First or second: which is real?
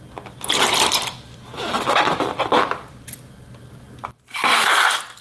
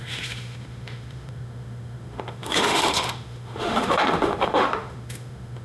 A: first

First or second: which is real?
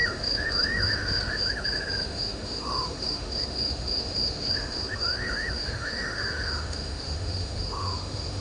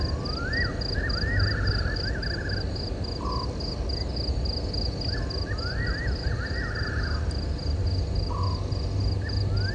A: second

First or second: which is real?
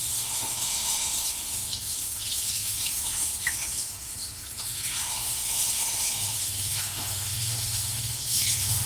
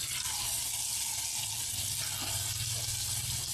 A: second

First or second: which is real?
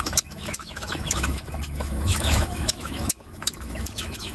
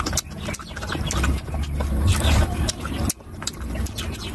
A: second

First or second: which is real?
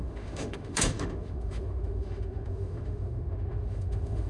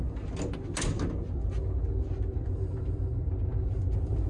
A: second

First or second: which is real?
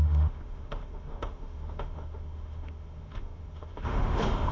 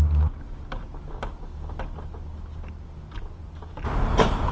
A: second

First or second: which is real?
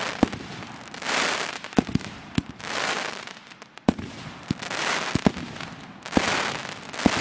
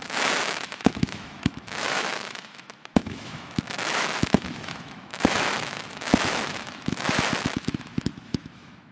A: first